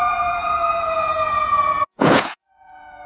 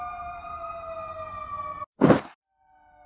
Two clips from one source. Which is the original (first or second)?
second